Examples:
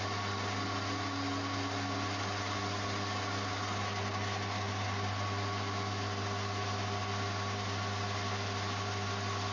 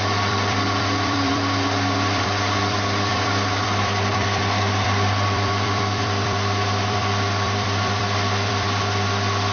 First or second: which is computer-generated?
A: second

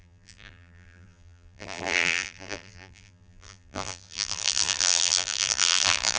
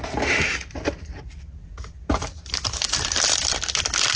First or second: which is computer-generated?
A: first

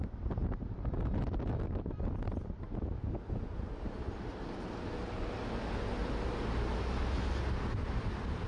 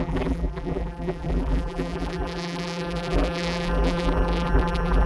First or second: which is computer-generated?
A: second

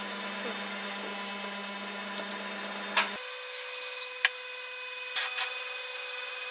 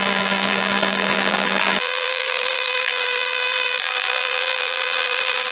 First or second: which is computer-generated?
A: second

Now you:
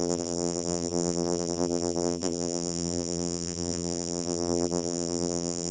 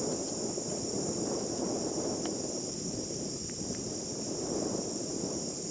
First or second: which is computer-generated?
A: first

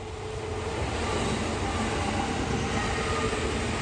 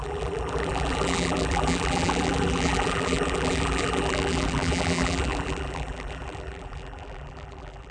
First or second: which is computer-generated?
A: second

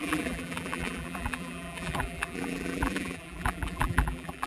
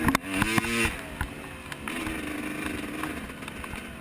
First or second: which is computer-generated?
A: first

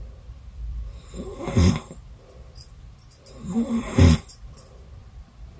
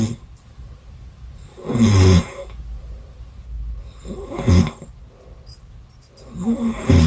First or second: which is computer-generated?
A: first